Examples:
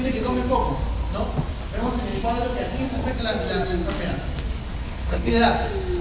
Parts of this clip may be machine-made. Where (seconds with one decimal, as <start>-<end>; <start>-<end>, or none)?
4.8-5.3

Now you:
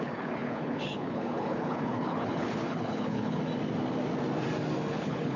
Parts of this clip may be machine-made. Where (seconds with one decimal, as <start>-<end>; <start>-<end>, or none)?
0.0-3.4; 4.9-5.4

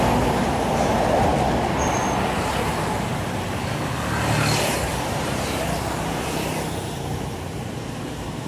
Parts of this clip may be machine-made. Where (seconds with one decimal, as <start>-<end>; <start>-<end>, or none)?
0.0-1.3; 5.2-8.5

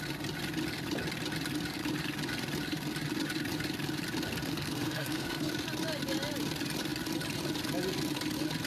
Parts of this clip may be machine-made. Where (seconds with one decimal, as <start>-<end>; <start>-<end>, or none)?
4.5-5.5